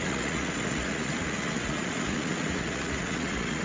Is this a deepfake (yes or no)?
yes